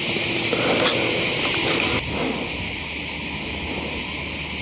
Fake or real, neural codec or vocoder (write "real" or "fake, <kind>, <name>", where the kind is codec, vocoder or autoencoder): real